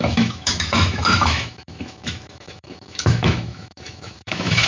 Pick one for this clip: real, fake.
fake